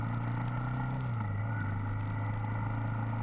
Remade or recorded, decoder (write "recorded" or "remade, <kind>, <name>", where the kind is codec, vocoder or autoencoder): recorded